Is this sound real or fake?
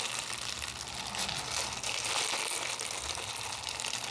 real